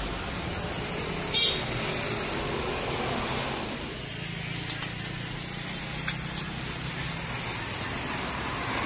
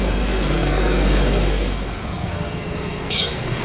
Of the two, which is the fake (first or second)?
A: second